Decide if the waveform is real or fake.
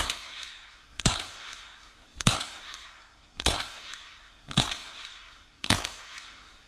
fake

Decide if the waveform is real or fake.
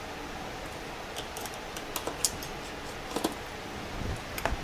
real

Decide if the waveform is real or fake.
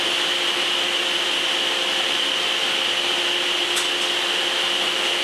real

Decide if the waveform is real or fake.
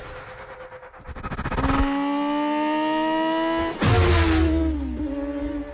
real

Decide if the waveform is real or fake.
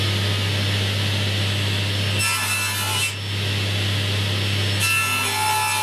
real